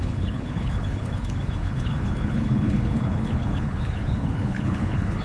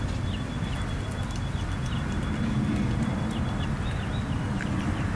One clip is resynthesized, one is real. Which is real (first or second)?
second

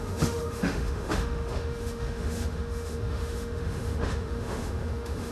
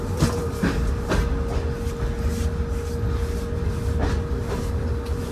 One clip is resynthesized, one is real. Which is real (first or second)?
second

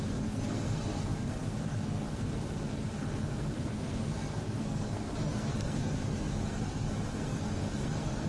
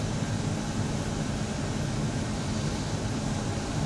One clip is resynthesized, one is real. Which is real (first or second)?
second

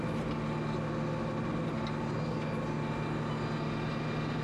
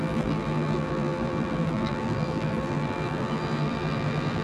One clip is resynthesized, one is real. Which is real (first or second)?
first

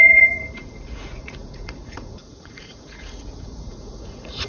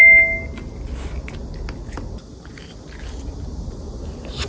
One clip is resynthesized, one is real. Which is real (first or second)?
second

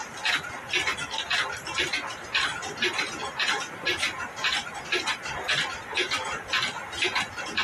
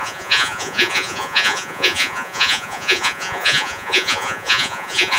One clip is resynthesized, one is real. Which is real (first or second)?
first